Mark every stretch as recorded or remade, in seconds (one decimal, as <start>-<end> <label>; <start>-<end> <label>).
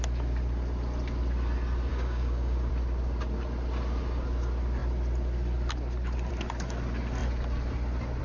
0.0-1.9 recorded; 1.9-2.7 remade; 2.7-8.2 recorded